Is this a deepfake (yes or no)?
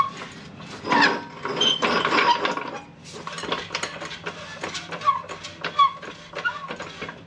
no